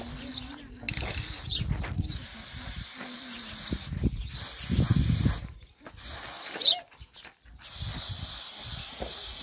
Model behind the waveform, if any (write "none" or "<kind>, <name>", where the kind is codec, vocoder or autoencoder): none